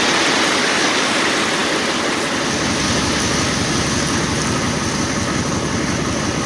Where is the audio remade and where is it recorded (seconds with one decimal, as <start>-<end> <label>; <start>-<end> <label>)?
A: 0.0-0.6 recorded; 0.6-1.2 remade; 1.2-6.5 recorded